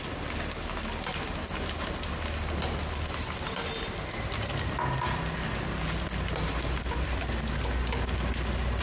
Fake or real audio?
real